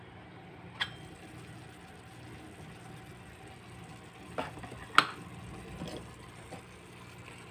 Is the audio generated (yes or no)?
no